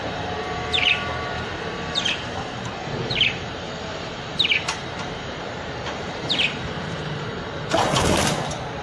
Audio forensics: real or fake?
fake